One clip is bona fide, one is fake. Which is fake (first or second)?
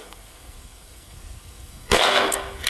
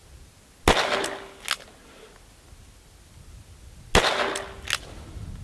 first